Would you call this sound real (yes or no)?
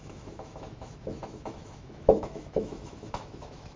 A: no